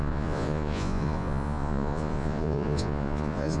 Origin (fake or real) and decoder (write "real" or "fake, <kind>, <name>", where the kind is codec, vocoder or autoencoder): fake, vocoder, Vocos